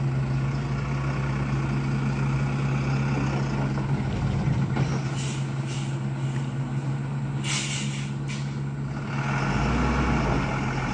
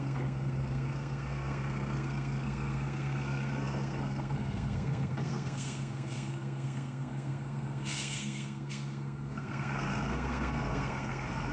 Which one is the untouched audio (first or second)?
first